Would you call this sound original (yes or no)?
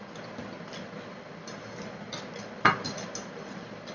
yes